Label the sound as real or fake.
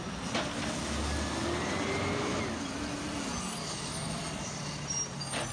real